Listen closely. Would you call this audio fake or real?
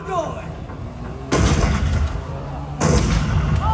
real